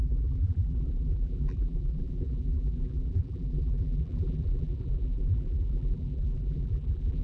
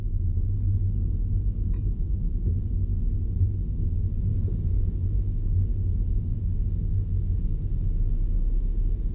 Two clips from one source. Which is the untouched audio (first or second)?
second